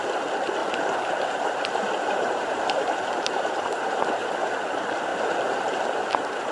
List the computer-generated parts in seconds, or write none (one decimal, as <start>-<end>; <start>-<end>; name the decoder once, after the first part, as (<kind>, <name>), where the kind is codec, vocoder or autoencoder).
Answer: 0.6-4.5 (vocoder, BigVGAN v2); 5.1-6.5